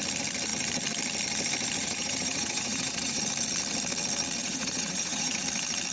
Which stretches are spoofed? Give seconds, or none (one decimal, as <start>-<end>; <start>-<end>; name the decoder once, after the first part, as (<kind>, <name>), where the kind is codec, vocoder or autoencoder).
1.8-3.2 (vocoder, Vocos); 4.4-5.4